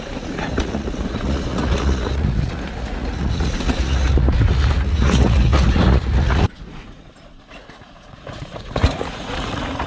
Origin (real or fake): fake